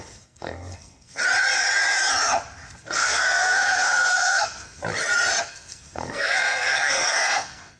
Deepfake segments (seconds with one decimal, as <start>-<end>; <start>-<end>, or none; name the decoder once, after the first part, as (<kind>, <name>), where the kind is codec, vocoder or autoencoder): 0.0-1.2 (codec, SNAC); 2.8-4.8; 5.4-7.8